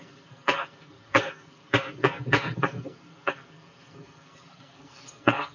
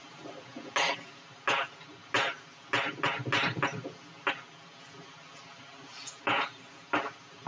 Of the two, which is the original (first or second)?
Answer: second